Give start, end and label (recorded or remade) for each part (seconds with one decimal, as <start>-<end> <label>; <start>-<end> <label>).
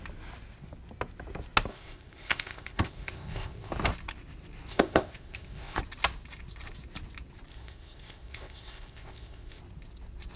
0.0-1.7 recorded; 1.7-3.7 remade; 3.7-4.7 recorded; 4.7-5.8 remade; 5.8-7.5 recorded; 7.5-9.6 remade; 9.6-10.4 recorded